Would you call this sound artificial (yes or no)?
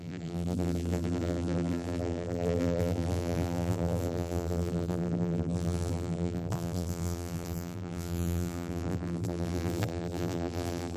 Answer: yes